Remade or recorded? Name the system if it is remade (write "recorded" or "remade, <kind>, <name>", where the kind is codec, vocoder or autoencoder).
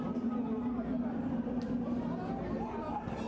recorded